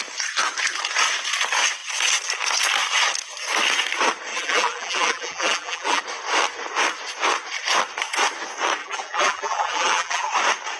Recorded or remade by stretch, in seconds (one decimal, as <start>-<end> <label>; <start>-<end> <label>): 0.0-4.3 recorded; 4.3-6.0 remade; 6.0-8.8 recorded; 8.8-10.3 remade; 10.3-10.8 recorded